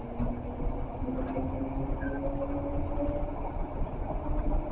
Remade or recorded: recorded